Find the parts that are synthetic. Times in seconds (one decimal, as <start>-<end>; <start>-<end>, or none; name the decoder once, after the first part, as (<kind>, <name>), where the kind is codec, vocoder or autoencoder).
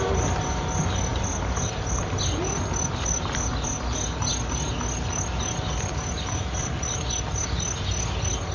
none